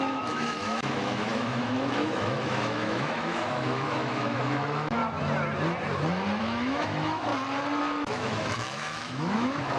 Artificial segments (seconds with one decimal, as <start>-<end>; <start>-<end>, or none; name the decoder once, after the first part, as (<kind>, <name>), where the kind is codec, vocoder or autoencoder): 0.0-5.0 (autoencoder, DAC-VAE); 6.4-7.3; 7.8-9.8